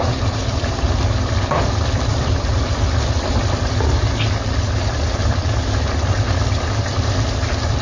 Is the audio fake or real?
fake